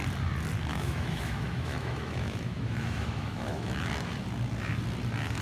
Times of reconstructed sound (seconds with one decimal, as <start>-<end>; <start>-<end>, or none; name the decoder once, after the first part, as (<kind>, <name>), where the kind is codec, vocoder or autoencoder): 0.7-3.9 (autoencoder, DAC-VAE)